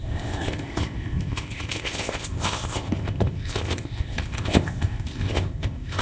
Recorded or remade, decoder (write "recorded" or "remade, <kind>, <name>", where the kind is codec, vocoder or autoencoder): remade, codec, ZipCodec